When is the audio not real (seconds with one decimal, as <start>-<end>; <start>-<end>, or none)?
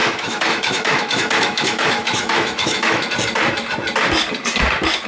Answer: 0.0-3.1